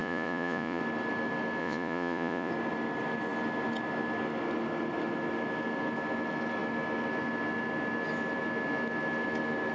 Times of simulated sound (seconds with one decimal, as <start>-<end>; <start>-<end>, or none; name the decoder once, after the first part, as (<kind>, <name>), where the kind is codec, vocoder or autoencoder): 0.0-0.8 (vocoder, Vocos); 1.6-2.5